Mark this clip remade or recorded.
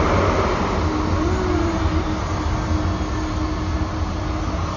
recorded